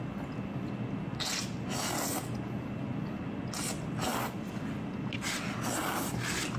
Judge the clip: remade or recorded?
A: recorded